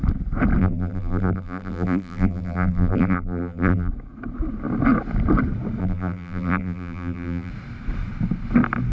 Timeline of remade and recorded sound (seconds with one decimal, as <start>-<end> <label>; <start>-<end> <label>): 0.0-0.6 recorded; 0.6-3.9 remade; 3.9-5.8 recorded; 5.8-7.5 remade; 7.5-8.9 recorded